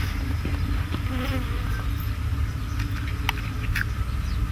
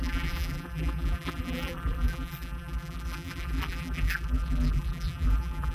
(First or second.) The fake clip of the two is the second